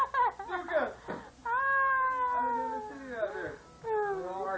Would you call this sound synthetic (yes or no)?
no